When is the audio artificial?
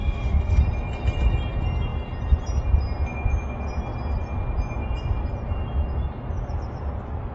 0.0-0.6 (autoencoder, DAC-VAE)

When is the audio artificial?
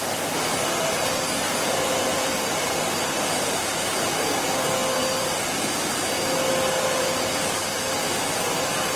2.1-2.9 (vocoder, BigVGAN v2)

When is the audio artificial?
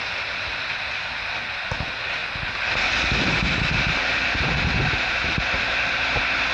none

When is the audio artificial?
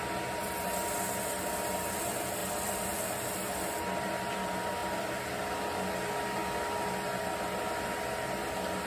none